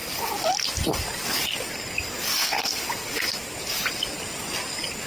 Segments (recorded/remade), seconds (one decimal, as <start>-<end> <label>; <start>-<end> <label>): 0.0-2.3 recorded; 2.3-2.8 remade; 2.8-5.1 recorded